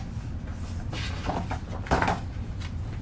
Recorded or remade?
recorded